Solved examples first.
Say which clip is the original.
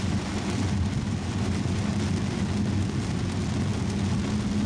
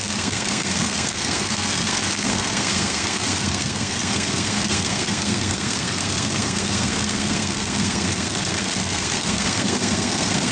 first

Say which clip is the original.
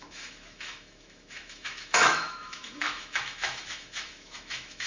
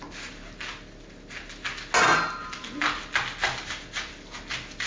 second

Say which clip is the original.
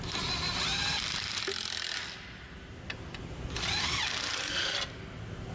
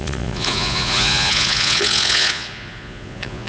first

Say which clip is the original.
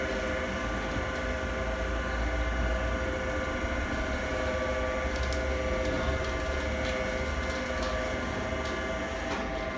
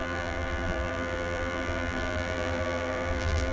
first